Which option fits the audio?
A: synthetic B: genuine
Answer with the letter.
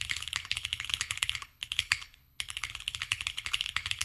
A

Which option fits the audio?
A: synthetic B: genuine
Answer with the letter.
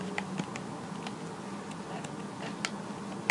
B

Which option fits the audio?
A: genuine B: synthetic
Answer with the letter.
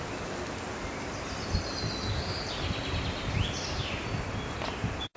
A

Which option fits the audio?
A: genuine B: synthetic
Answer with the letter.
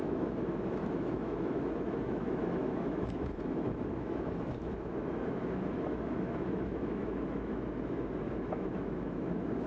B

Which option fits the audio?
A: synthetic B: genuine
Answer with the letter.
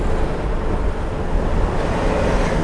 B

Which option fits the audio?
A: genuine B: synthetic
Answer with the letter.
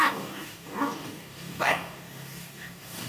B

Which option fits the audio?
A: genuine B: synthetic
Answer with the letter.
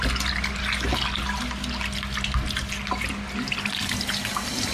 A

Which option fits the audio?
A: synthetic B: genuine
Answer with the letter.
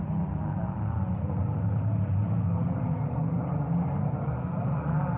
B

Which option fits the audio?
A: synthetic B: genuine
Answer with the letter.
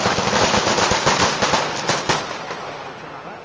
B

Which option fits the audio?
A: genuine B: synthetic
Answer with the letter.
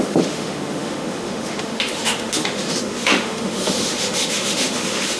B